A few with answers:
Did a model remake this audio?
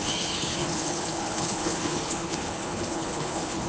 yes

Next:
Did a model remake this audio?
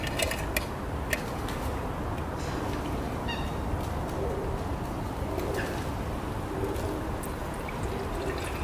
no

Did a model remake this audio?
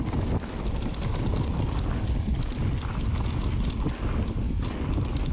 no